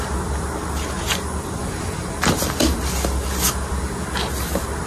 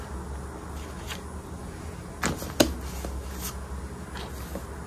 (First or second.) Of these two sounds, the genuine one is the second